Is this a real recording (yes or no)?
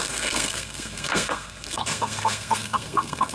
no